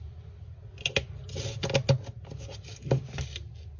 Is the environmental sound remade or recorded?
recorded